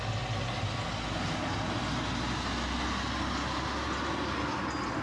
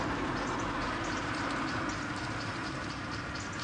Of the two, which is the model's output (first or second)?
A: second